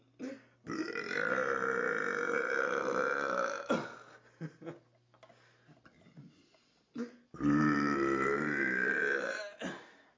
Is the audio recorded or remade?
recorded